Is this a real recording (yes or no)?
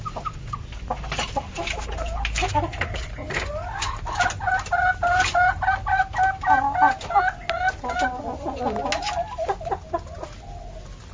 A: yes